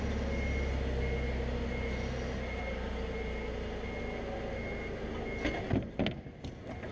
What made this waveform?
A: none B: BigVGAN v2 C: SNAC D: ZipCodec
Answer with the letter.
A